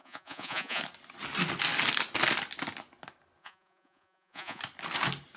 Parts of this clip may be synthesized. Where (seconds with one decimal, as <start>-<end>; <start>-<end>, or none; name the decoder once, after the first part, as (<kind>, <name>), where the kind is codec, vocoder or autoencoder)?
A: 0.0-0.8 (vocoder, Vocos); 3.4-4.6

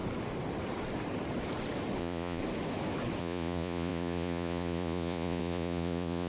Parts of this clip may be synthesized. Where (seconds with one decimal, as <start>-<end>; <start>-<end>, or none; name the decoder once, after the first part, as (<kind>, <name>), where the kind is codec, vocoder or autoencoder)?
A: 2.0-2.4 (vocoder, Vocos); 3.2-6.3

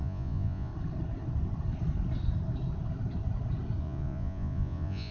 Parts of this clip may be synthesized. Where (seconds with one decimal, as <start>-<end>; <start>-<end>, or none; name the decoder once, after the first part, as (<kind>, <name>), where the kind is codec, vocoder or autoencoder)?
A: 0.0-0.7 (vocoder, Vocos); 3.8-5.1

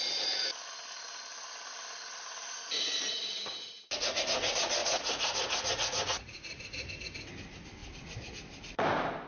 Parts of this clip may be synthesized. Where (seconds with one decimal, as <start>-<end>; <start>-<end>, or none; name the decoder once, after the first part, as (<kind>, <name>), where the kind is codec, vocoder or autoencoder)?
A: 4.8-6.9 (vocoder, Vocos)